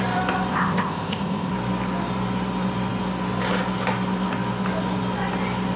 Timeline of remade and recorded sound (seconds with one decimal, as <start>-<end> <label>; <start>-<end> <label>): 0.0-0.5 recorded; 0.5-1.5 remade; 1.5-5.8 recorded